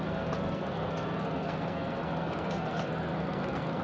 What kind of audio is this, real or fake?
fake